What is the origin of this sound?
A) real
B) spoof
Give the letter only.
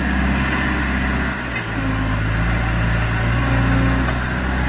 A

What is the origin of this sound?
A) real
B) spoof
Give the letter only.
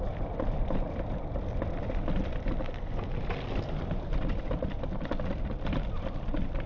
A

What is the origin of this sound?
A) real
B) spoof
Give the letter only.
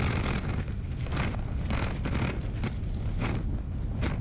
A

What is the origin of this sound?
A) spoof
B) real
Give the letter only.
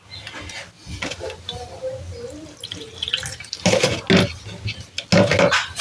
B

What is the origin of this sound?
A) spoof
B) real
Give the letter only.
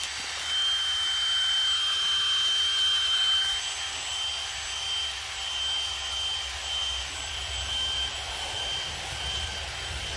B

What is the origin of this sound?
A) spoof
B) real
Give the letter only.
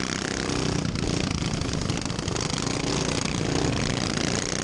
B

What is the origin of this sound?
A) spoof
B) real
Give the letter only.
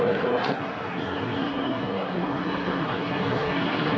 A